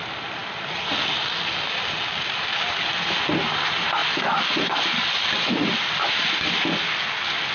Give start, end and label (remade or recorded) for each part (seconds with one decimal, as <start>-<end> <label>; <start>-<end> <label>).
0.0-7.5 recorded